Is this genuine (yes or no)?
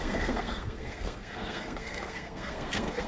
no